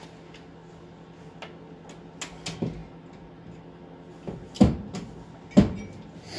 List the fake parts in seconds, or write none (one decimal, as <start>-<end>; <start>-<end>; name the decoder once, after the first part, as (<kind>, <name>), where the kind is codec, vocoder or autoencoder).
none